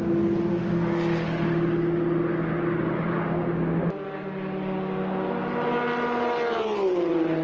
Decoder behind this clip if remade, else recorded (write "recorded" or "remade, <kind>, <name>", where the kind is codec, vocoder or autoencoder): recorded